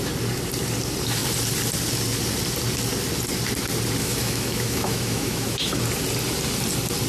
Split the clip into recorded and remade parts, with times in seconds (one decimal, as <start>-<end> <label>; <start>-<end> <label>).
0.0-4.0 recorded; 4.0-5.8 remade; 5.8-7.1 recorded